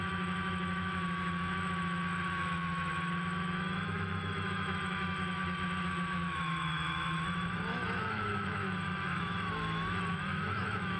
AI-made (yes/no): yes